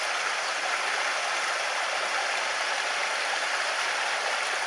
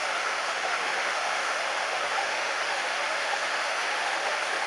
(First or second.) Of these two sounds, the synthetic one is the second